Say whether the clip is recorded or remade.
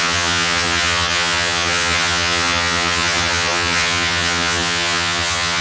remade